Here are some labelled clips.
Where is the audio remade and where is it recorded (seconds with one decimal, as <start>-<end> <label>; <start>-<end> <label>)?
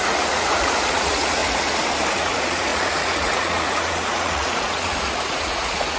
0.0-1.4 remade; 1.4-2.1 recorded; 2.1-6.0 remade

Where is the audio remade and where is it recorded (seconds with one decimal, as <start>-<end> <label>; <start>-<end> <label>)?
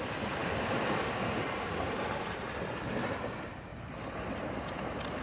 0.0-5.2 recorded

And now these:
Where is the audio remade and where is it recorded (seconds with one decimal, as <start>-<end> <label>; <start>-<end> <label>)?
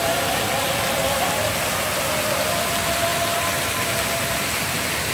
0.0-5.1 recorded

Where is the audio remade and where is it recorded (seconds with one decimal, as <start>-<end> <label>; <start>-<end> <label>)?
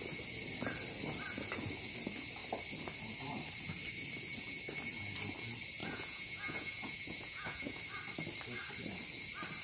0.0-5.8 recorded; 5.8-7.8 remade; 7.8-9.6 recorded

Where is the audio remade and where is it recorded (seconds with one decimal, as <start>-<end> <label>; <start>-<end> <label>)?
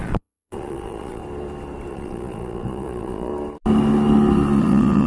0.0-1.2 remade; 1.2-1.9 recorded; 1.9-3.3 remade; 3.3-4.6 recorded; 4.6-5.1 remade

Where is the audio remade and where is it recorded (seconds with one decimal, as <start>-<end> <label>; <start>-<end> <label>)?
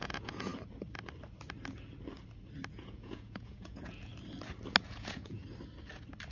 0.0-0.5 remade; 0.5-2.7 recorded; 2.7-4.1 remade; 4.1-4.9 recorded; 4.9-5.4 remade; 5.4-6.3 recorded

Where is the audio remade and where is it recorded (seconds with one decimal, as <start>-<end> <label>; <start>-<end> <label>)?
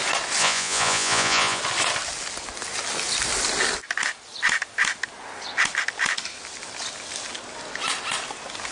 0.0-0.4 recorded; 0.4-1.6 remade; 1.6-8.7 recorded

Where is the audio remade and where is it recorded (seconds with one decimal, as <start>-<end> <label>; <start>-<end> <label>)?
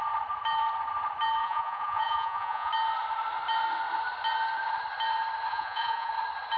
0.0-1.4 recorded; 1.4-2.7 remade; 2.7-5.5 recorded; 5.5-6.1 remade; 6.1-6.6 recorded